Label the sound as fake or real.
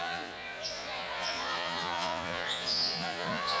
fake